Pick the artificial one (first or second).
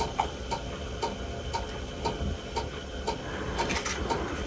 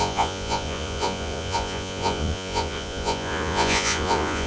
second